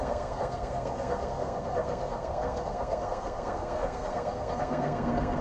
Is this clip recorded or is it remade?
remade